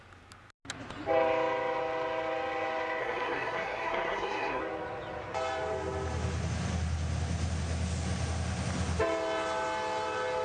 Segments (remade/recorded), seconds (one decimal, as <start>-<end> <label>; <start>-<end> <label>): 0.0-3.0 recorded; 3.0-4.6 remade; 4.6-10.4 recorded